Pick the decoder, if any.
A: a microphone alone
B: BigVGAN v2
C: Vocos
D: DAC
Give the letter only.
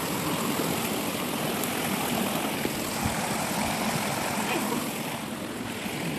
A